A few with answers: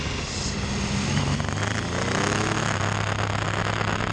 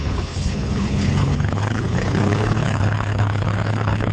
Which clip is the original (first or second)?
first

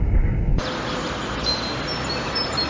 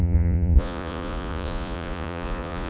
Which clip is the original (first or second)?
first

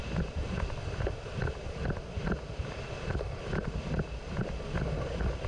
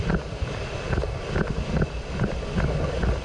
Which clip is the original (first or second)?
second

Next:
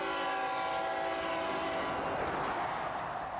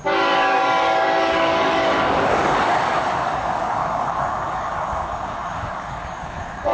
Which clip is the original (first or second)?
first